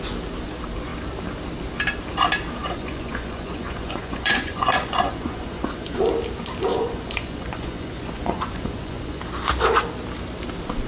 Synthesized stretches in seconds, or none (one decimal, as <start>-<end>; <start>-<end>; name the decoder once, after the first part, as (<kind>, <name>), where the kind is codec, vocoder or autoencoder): 2.6-6.0 (vocoder, Vocos); 6.7-9.2